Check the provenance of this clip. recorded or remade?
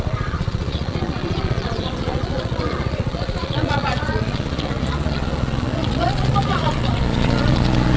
remade